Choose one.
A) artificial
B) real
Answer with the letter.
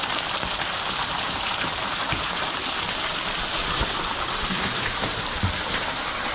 A